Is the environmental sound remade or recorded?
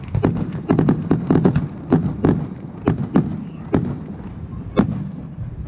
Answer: recorded